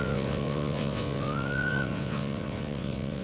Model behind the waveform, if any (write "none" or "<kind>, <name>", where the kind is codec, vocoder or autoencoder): vocoder, WaveNeXt